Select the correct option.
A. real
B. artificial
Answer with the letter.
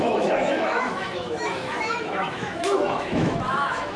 B